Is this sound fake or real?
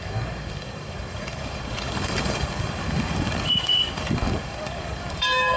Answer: fake